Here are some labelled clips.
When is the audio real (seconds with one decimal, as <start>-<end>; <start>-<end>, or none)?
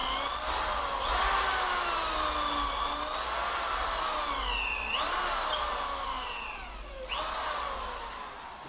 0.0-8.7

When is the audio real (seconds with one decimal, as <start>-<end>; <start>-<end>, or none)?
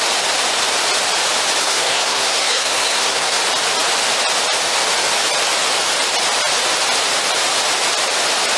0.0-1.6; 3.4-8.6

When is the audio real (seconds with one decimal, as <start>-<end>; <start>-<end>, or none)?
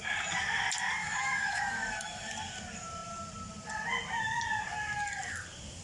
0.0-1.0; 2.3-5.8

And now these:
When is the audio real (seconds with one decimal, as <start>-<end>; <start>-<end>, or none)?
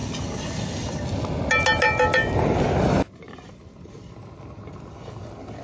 0.0-5.6